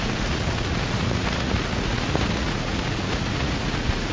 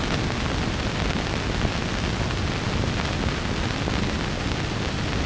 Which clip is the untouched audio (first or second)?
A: second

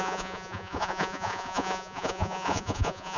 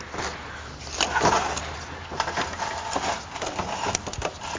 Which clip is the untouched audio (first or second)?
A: second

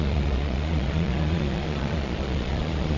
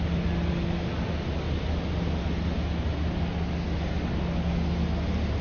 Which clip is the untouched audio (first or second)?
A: second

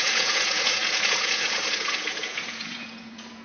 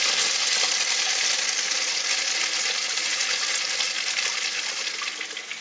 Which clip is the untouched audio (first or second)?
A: second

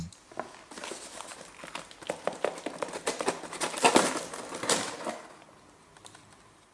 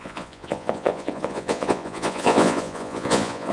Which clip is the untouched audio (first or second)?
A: first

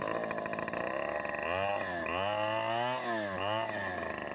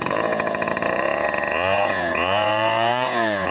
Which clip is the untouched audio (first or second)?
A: first